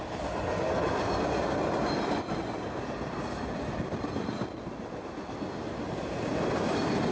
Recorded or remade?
recorded